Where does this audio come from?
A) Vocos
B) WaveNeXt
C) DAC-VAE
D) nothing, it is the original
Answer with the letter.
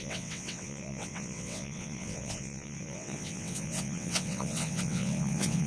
B